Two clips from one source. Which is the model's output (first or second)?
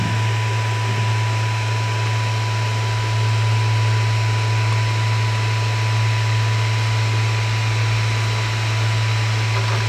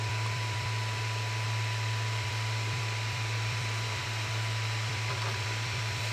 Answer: second